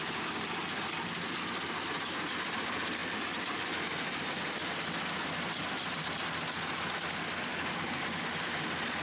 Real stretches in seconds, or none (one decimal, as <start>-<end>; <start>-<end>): 0.0-3.0; 3.8-7.5; 8.5-9.0